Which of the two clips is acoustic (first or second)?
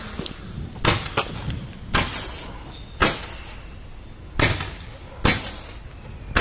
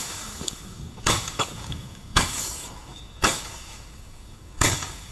first